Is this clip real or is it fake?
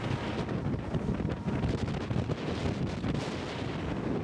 real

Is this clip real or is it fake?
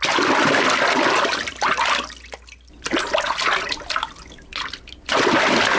real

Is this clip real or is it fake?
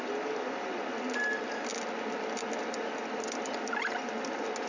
real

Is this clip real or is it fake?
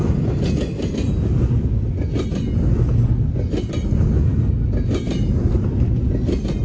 real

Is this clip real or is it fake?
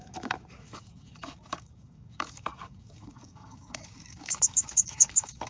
fake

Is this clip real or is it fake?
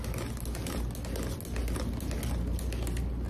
real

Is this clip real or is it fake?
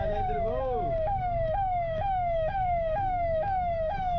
fake